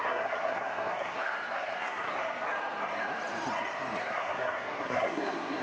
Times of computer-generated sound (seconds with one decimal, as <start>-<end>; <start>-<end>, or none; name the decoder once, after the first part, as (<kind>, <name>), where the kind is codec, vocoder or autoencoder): 0.0-2.1 (codec, SNAC); 4.0-5.6